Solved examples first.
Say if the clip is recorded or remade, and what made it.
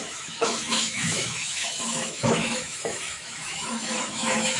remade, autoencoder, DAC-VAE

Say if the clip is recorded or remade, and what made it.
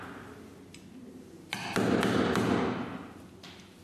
recorded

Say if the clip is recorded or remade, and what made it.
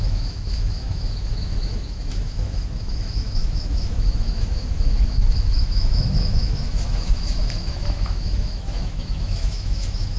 remade, autoencoder, DAC-VAE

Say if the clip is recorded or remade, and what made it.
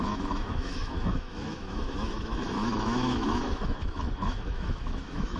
remade, autoencoder, DAC-VAE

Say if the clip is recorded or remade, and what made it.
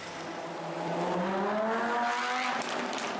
recorded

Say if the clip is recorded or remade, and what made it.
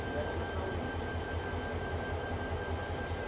recorded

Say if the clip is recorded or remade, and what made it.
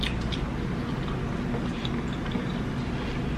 recorded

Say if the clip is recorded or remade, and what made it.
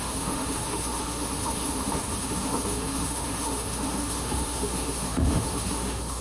remade, autoencoder, DAC-VAE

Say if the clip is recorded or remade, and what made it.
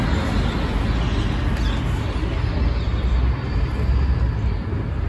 recorded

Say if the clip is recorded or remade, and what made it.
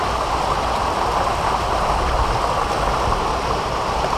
recorded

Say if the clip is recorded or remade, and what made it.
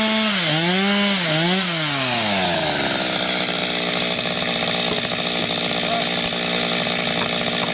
recorded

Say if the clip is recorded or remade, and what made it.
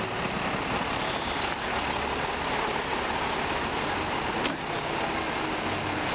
recorded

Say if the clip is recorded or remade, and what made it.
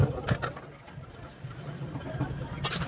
recorded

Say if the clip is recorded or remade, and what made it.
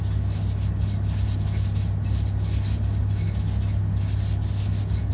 recorded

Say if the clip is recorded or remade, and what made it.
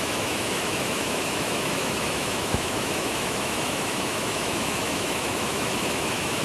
remade, autoencoder, DAC-VAE